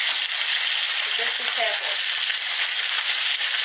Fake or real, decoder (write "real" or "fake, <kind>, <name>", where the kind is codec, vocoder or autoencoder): real